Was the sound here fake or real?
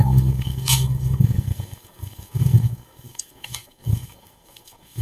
fake